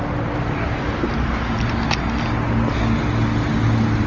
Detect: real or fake real